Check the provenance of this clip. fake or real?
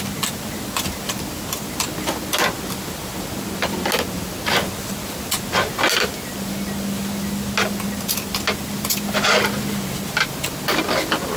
real